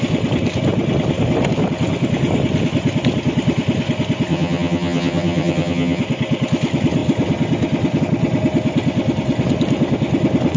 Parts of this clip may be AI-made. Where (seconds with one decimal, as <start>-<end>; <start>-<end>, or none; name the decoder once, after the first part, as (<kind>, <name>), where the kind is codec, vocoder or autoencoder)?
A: 4.3-6.0 (vocoder, HiFi-GAN)